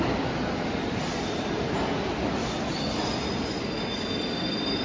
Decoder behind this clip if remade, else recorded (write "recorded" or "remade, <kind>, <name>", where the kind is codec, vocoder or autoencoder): recorded